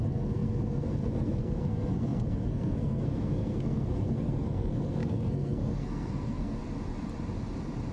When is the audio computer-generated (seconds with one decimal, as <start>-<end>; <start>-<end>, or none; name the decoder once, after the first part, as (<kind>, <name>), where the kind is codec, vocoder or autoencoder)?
0.0-6.6 (codec, SNAC)